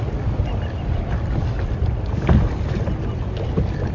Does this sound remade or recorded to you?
recorded